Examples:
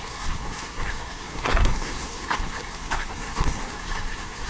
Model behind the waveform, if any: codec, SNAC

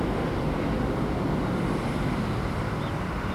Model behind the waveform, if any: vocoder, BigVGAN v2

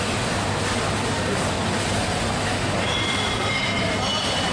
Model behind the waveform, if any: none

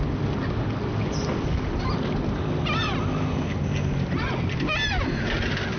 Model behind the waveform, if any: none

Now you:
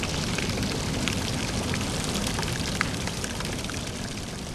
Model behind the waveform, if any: vocoder, BigVGAN v2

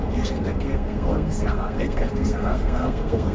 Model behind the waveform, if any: codec, SNAC